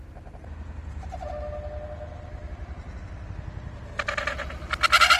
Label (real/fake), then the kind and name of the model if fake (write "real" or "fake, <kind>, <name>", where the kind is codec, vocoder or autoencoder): real